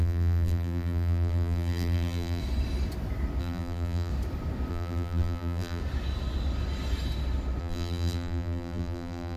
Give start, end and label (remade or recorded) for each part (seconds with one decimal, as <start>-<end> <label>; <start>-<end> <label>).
0.0-2.4 remade; 2.4-3.4 recorded; 3.4-4.1 remade; 4.1-4.7 recorded; 4.7-5.8 remade; 5.8-7.6 recorded; 7.6-9.4 remade